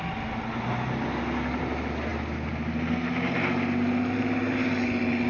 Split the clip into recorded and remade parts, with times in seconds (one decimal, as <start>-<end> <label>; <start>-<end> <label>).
0.0-5.3 recorded